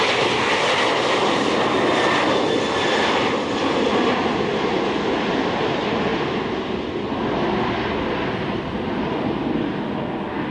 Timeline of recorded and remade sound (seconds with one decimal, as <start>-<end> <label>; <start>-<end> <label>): 0.0-10.5 recorded